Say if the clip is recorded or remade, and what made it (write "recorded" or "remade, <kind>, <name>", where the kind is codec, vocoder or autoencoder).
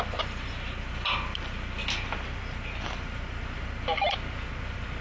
recorded